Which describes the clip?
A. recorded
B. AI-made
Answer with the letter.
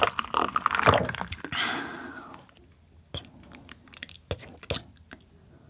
A